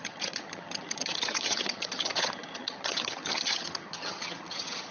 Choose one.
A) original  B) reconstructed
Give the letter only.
B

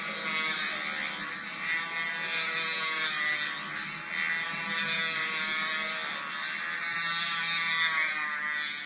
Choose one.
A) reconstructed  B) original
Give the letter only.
B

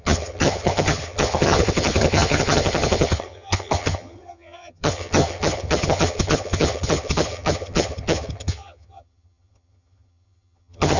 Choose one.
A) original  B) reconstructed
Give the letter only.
B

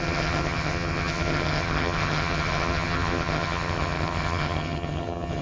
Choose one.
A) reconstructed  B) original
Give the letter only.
A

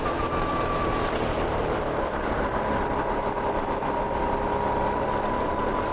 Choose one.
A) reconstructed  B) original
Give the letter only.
B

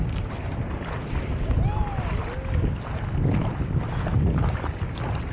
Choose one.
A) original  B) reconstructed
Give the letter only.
A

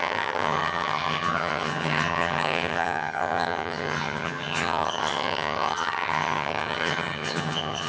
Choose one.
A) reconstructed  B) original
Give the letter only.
A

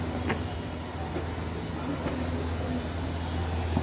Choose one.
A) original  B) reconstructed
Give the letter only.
A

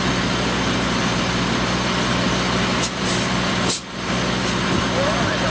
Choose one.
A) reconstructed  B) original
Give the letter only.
B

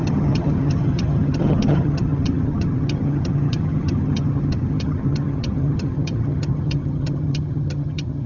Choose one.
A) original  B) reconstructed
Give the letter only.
B